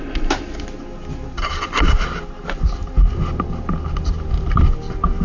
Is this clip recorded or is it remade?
recorded